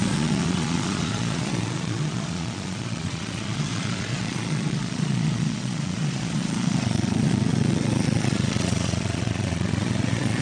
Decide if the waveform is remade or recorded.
remade